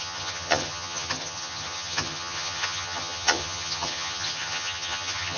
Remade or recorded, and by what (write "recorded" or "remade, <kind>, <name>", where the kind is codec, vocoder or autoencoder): remade, vocoder, HiFi-GAN